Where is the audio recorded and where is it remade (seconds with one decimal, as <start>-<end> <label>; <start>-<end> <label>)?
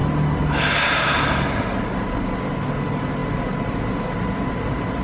0.0-5.0 recorded